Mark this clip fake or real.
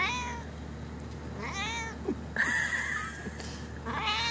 real